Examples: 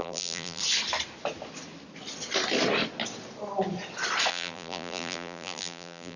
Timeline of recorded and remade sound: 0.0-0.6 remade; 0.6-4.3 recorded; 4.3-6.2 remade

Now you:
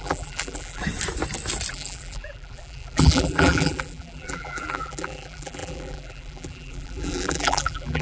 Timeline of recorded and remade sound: 0.0-0.8 remade; 0.8-1.7 recorded; 1.7-8.0 remade